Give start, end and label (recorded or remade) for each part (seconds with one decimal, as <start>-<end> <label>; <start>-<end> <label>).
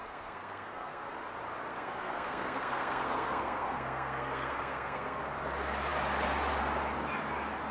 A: 0.0-1.1 remade; 1.1-1.7 recorded; 1.7-5.2 remade; 5.2-7.7 recorded